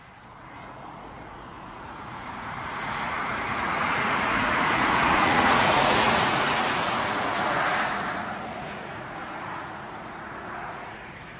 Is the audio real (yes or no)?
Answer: no